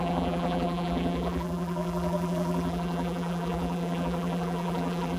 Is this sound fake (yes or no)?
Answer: yes